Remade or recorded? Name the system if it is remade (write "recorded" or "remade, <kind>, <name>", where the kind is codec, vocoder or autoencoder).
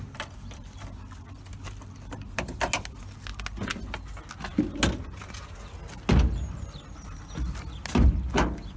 recorded